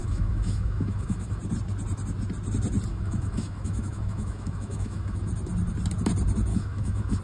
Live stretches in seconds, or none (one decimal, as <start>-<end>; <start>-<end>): 1.4-2.9; 5.3-6.5